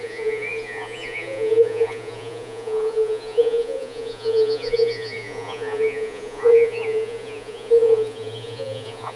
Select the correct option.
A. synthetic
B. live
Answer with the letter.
A